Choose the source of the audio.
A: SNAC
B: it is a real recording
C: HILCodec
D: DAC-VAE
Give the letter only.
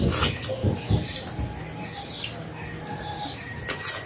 B